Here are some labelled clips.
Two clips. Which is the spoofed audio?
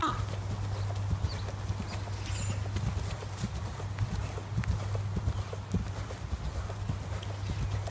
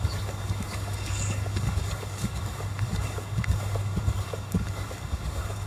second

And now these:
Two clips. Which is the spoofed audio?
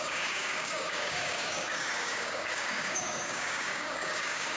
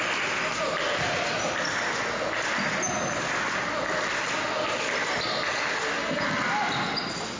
first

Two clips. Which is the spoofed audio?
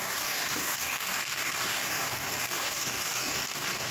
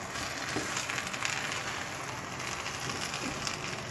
first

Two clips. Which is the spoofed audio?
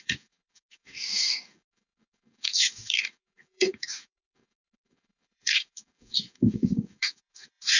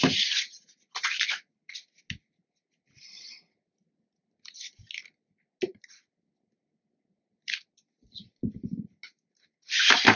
first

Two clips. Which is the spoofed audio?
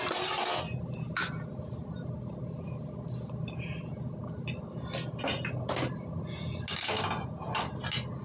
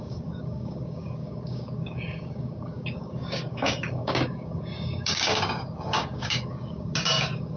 second